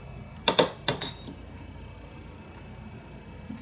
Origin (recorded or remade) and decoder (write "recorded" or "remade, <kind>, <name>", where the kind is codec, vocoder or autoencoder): recorded